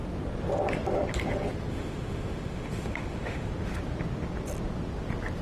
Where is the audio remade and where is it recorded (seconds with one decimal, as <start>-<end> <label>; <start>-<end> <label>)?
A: 0.0-1.7 recorded; 1.7-3.5 remade; 3.5-5.4 recorded